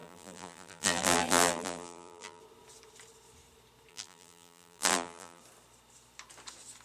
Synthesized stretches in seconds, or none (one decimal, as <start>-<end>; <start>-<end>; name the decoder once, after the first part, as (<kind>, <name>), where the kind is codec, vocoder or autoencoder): 0.0-2.4 (vocoder, BigVGAN v2); 3.9-5.4